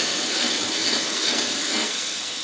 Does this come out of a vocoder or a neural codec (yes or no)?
yes